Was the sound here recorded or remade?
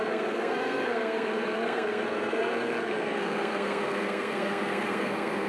remade